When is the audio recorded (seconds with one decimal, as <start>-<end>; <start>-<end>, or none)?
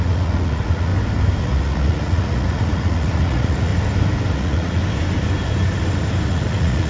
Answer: 0.9-1.4; 3.7-4.3; 4.8-6.3